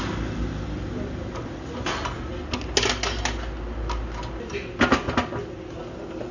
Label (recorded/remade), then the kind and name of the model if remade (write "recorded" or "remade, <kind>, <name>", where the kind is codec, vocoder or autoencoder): recorded